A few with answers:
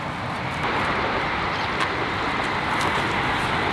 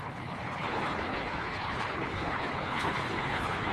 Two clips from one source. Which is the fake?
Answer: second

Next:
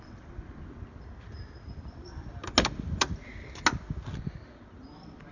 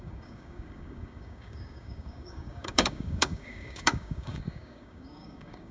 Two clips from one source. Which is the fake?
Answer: second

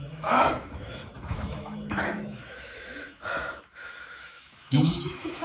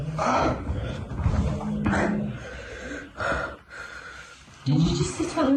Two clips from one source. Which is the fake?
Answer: first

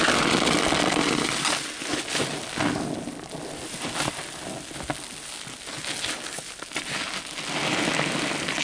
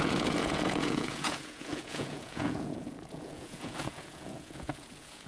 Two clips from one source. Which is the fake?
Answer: second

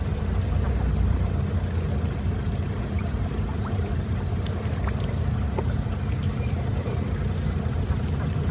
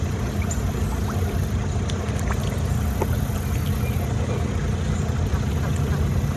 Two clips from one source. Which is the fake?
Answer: first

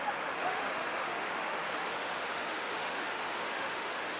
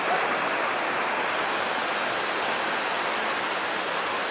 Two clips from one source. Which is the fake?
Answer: first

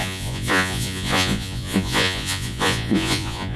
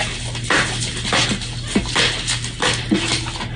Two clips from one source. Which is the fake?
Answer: first